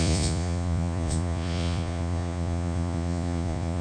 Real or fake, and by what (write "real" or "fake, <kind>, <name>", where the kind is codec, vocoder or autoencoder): fake, vocoder, Vocos